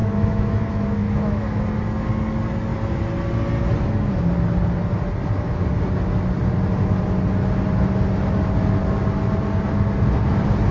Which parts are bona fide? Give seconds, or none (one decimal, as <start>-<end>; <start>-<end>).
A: 1.6-10.7